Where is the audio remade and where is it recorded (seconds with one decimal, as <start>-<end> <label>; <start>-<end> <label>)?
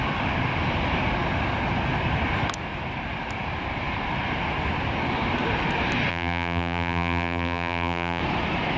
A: 0.0-6.1 recorded; 6.1-8.2 remade; 8.2-8.8 recorded